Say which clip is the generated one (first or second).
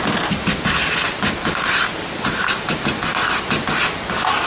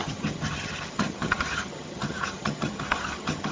second